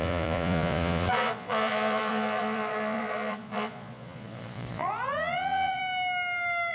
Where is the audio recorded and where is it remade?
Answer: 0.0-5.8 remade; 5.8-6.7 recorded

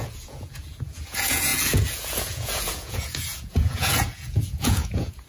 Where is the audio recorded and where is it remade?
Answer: 0.0-5.3 remade

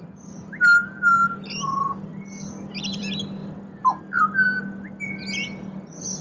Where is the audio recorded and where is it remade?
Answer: 0.0-6.2 recorded

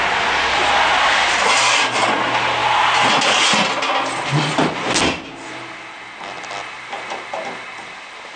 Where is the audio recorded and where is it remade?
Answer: 0.0-8.4 recorded